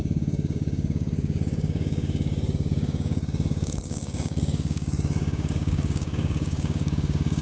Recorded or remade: remade